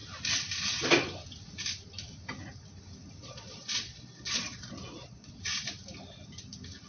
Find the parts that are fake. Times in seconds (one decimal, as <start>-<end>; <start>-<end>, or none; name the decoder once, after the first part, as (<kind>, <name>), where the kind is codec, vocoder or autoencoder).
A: 3.2-5.4 (vocoder, Vocos)